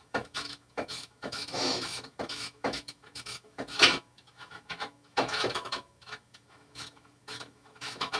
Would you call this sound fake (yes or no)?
yes